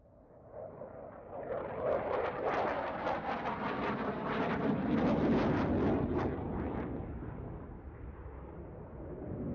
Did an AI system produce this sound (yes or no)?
no